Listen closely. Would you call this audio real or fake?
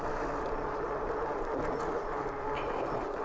real